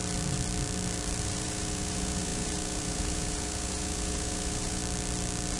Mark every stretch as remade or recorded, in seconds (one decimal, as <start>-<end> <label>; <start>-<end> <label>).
0.0-1.2 recorded; 1.2-4.8 remade; 4.8-5.6 recorded